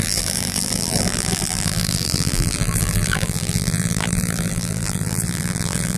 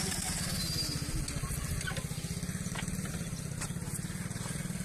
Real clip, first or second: second